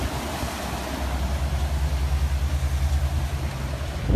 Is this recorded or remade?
recorded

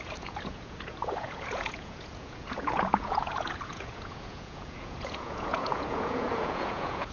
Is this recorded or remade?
remade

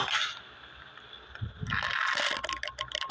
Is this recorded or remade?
recorded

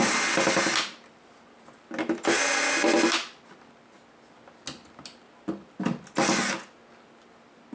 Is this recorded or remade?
recorded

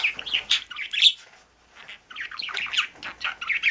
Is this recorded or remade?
recorded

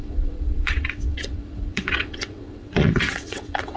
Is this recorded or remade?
remade